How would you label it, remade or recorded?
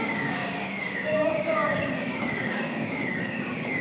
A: remade